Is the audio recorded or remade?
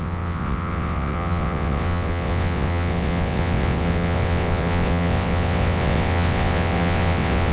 remade